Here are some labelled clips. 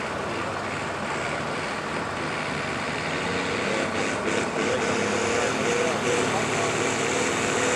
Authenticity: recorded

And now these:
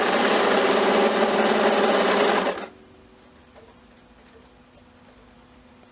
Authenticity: recorded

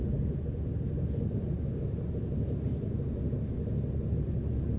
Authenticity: recorded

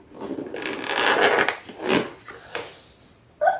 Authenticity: recorded